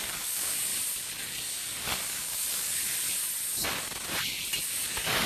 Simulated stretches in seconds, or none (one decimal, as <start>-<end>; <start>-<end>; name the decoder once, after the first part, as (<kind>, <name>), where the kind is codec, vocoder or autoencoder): 0.0-0.7 (codec, DAC); 1.5-2.8; 4.7-5.3